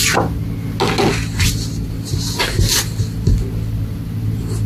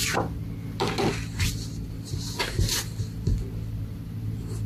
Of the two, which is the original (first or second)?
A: first